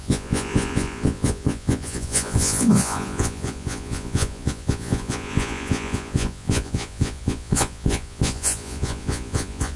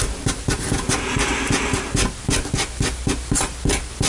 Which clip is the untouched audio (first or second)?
second